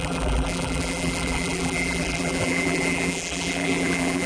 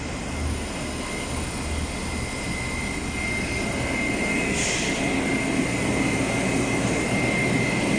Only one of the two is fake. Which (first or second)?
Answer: first